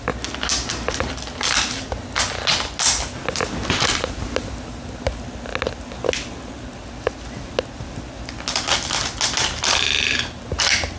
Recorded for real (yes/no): yes